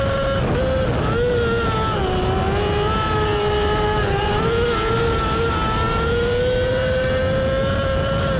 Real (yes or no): yes